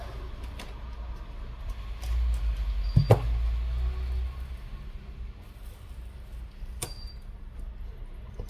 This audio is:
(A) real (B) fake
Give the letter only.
A